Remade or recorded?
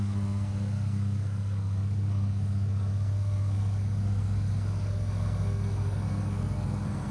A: remade